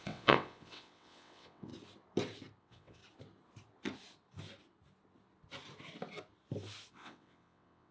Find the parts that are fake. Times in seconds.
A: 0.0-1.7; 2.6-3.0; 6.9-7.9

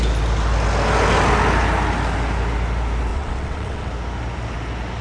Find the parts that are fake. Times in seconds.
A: 3.1-3.9